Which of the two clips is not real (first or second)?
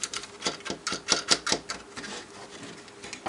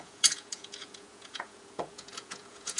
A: second